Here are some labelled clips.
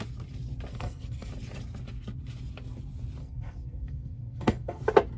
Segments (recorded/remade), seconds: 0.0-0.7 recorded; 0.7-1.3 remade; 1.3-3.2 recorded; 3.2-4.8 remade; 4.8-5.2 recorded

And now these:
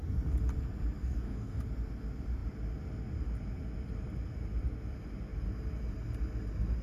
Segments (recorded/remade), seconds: 0.0-1.0 recorded; 1.0-1.6 remade; 1.6-6.8 recorded

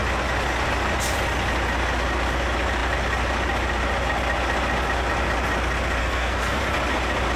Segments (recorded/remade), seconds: 0.0-6.0 recorded; 6.0-6.6 remade; 6.6-7.4 recorded

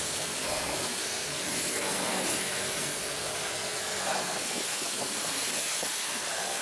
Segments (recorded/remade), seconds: 0.0-6.6 remade